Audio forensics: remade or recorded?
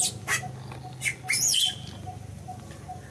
recorded